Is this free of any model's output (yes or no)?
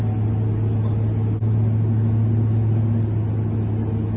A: yes